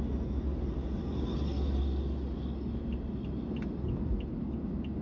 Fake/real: real